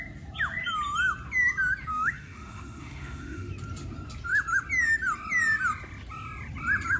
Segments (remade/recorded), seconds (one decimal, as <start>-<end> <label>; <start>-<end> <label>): 0.0-1.9 recorded; 1.9-3.5 remade; 3.5-7.0 recorded